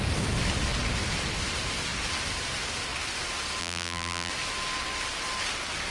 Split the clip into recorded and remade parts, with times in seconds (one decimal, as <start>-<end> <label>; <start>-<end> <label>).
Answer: 0.0-3.6 recorded; 3.6-4.3 remade; 4.3-5.9 recorded